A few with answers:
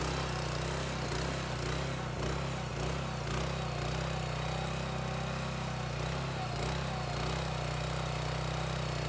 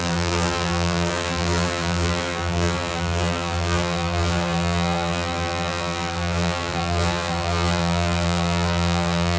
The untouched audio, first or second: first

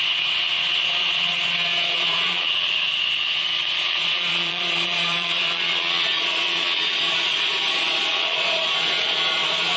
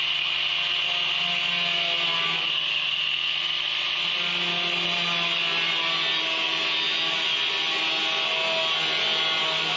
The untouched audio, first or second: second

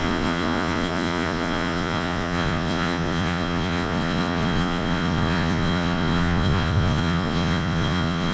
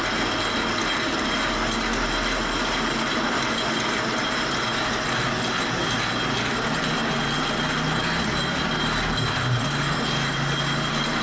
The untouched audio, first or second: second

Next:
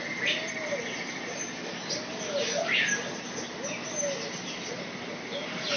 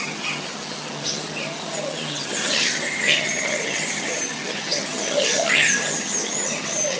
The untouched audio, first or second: first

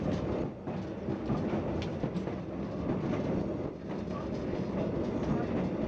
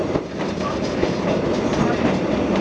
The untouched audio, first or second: first